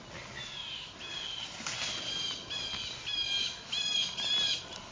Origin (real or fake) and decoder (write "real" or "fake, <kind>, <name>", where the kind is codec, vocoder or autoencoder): real